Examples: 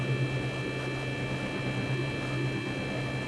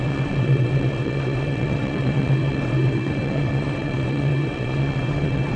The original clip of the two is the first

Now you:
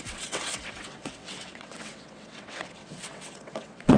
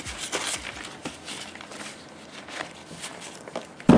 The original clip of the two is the second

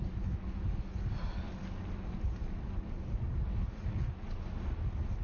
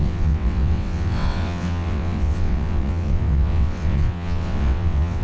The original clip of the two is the first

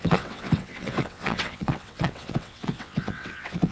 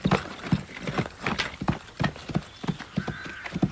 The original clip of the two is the second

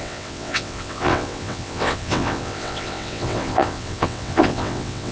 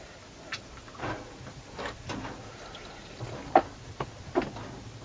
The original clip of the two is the second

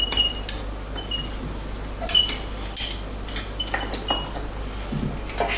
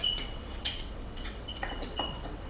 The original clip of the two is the first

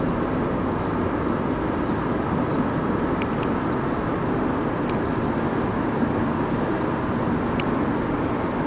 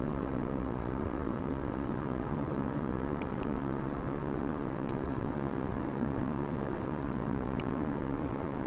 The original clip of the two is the first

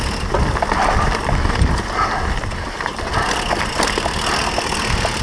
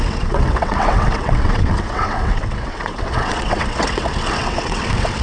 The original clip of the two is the first